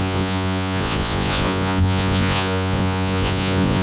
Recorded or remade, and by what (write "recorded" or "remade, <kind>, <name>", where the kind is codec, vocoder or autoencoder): remade, vocoder, Vocos